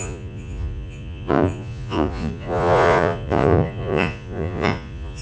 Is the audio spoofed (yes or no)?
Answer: yes